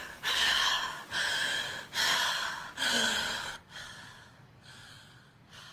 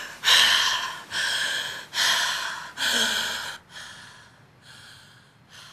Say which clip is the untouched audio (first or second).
second